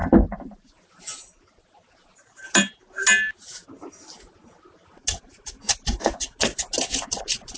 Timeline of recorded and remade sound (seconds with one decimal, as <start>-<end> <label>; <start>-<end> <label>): 0.0-7.6 recorded